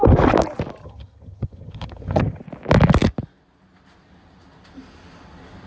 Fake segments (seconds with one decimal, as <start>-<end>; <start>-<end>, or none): 0.8-2.4